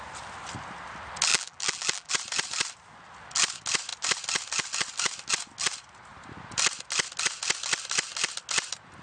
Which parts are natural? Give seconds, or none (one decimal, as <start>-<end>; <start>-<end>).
0.0-1.3; 2.1-9.0